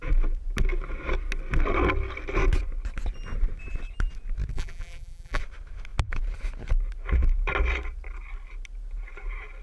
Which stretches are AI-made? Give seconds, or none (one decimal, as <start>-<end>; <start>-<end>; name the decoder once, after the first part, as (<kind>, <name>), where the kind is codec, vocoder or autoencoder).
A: 4.5-5.4 (vocoder, BigVGAN v2)